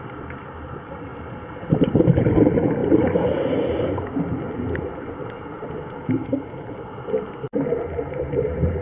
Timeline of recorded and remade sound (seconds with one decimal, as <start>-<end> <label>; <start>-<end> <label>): 0.0-1.1 recorded; 1.1-2.3 remade; 2.3-6.2 recorded; 6.2-8.8 remade